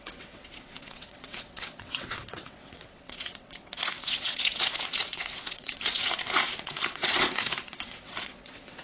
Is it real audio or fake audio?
fake